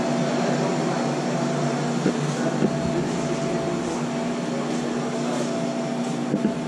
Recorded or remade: recorded